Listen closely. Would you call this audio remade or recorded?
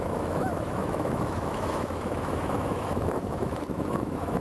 remade